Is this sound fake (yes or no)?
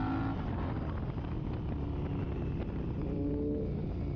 no